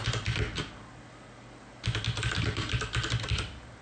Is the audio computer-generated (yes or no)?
no